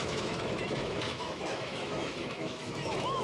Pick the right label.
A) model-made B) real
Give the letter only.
A